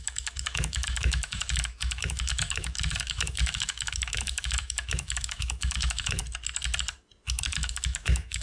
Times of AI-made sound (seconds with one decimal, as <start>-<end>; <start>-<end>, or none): 0.0-6.2; 7.5-8.4